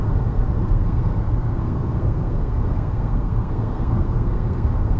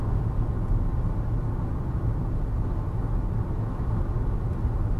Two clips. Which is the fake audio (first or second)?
first